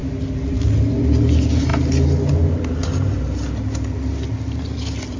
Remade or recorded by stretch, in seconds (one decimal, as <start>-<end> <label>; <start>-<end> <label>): 0.0-5.2 recorded